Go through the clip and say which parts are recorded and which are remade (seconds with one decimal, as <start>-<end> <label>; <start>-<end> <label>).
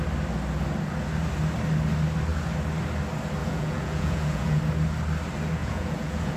0.0-3.4 recorded; 3.4-4.6 remade; 4.6-5.6 recorded; 5.6-6.4 remade